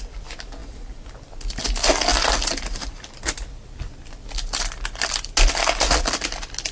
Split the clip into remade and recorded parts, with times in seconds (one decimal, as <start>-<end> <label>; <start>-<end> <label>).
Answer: 0.0-6.7 recorded